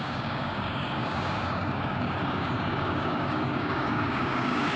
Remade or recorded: remade